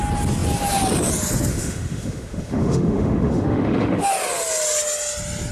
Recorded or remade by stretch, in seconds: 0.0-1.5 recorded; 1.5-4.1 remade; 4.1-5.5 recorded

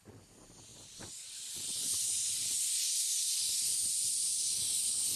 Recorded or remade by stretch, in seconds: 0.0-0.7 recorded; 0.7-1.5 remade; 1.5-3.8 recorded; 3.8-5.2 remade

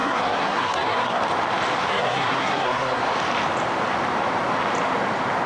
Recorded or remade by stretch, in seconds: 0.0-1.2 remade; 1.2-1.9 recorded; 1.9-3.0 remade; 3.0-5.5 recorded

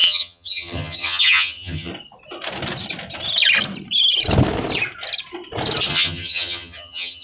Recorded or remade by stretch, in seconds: 0.0-1.9 remade; 1.9-5.9 recorded; 5.9-7.2 remade